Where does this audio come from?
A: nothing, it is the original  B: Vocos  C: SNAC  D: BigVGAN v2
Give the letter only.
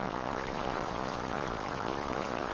B